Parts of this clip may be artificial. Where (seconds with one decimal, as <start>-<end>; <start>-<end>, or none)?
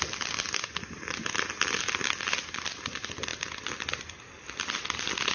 none